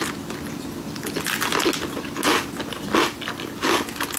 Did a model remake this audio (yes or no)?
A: no